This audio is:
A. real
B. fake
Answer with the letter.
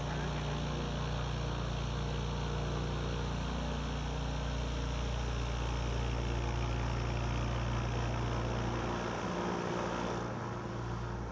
A